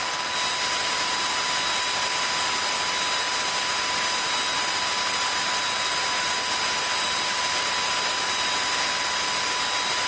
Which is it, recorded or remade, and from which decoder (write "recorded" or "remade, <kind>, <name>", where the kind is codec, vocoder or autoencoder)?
recorded